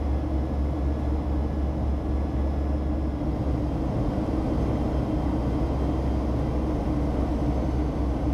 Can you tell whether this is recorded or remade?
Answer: recorded